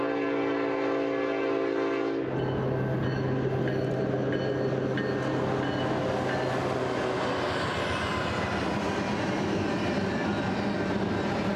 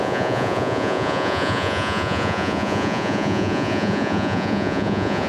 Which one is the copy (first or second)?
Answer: second